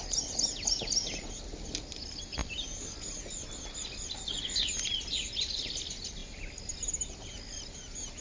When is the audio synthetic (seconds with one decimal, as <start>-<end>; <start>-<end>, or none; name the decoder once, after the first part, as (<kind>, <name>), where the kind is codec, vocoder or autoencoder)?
none